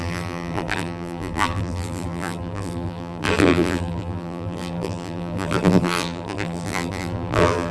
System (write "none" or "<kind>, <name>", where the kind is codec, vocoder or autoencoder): vocoder, BigVGAN v2